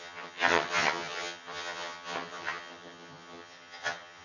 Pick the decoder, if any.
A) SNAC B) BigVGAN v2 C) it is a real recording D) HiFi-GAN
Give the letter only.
D